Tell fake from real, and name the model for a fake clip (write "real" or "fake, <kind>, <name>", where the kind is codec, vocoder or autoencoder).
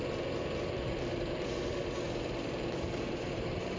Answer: fake, vocoder, BigVGAN v2